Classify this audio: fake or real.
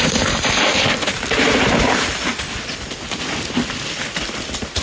real